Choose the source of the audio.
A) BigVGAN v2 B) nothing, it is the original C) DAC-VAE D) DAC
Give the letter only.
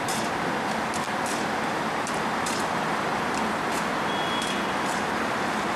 A